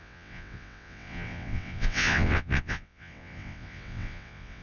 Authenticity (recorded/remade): remade